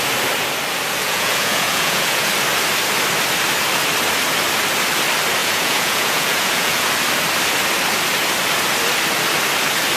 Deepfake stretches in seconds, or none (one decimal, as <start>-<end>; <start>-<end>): 1.0-2.3; 5.4-6.9